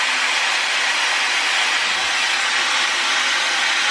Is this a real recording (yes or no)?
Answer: yes